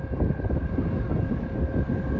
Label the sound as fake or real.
real